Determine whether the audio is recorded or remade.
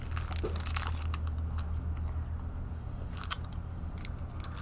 recorded